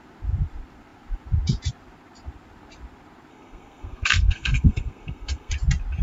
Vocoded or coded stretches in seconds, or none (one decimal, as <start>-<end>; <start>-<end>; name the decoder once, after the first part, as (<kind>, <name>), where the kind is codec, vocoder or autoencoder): 3.3-5.5 (codec, SNAC)